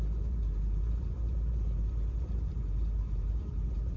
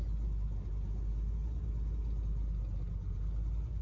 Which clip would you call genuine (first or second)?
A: second